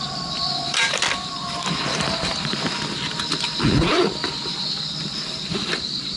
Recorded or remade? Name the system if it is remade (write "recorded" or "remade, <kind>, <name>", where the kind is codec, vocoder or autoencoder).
remade, vocoder, BigVGAN v2